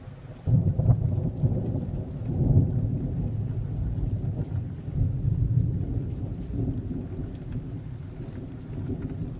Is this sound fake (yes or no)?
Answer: no